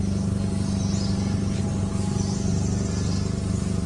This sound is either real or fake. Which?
real